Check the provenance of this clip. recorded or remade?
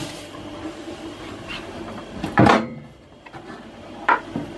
recorded